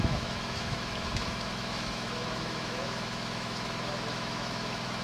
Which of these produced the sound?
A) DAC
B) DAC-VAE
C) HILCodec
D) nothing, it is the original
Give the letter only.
B